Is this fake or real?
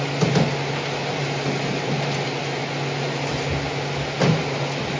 real